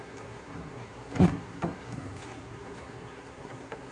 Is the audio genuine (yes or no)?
no